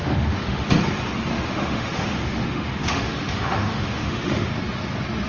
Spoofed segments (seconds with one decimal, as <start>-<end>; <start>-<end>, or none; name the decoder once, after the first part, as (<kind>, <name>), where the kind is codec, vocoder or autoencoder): 0.0-0.7 (autoencoder, DAC-VAE); 1.3-4.5